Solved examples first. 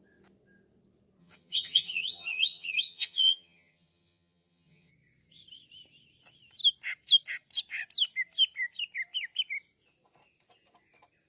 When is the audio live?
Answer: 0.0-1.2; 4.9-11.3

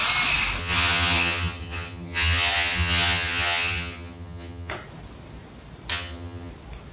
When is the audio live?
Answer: 0.0-0.6; 4.7-5.9; 6.5-6.9

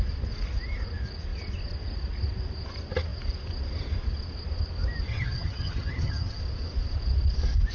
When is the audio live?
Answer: 0.0-5.1; 6.4-7.7

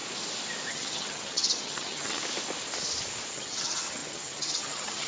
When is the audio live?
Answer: 0.0-0.7; 2.2-3.3

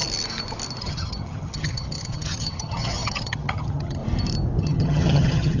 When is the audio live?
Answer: 0.0-0.8; 4.0-4.6

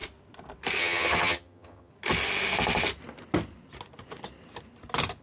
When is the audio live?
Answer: 0.0-0.8; 1.9-5.2

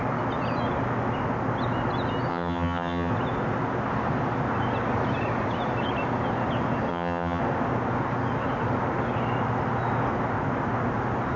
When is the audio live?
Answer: 0.0-2.3; 3.1-6.9; 7.4-11.4